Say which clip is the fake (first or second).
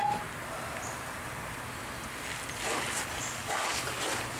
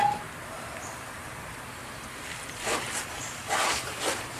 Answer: second